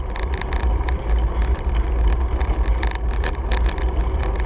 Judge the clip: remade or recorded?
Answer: recorded